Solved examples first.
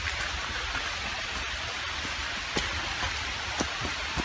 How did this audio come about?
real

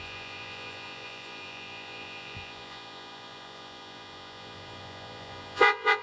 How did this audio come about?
fake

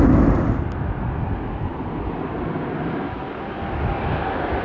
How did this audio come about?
real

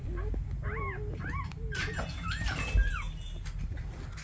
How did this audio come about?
real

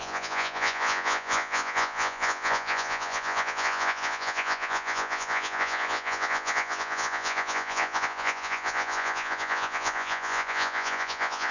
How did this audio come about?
fake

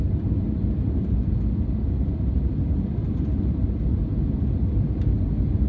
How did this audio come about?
real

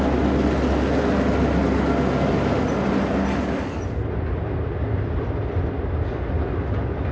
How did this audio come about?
real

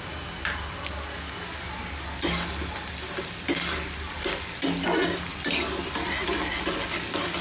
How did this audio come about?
real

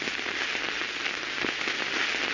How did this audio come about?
real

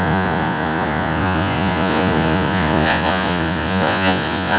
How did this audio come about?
fake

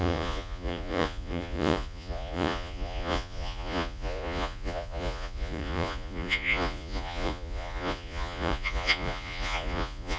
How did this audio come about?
fake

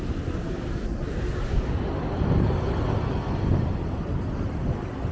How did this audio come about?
real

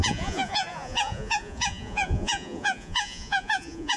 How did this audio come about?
fake